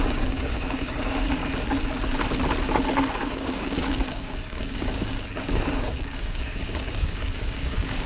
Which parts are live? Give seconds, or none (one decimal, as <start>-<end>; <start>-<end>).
1.4-3.2